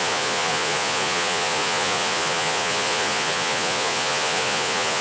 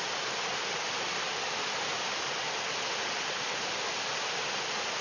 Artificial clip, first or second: first